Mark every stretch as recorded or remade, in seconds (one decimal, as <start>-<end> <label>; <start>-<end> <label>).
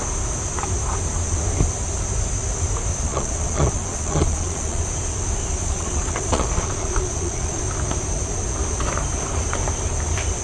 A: 0.0-2.9 recorded; 2.9-4.9 remade; 4.9-5.6 recorded; 5.6-7.6 remade; 7.6-10.4 recorded